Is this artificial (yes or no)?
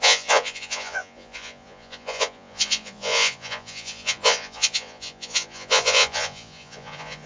yes